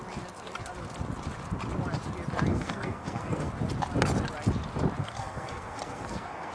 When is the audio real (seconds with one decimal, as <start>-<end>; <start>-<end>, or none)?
0.0-2.5; 3.5-5.0